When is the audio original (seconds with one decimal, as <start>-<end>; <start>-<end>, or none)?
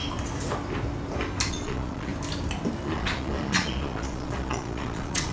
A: 0.0-1.5; 2.1-2.8